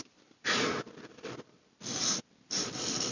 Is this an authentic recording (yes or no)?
no